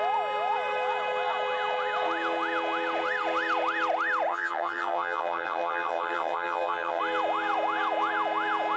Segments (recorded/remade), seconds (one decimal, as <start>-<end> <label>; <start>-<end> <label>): 0.0-4.3 recorded; 4.3-7.0 remade; 7.0-8.8 recorded